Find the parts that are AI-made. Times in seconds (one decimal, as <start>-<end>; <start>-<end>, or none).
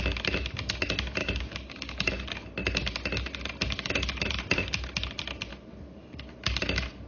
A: 1.2-2.1